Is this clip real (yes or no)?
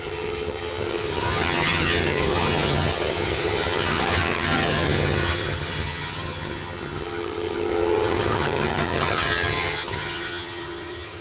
no